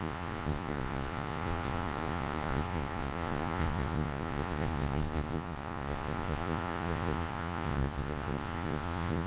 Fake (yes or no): yes